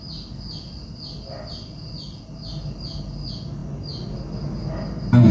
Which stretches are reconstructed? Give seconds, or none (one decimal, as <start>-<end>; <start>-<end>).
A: none